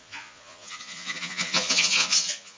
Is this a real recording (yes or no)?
no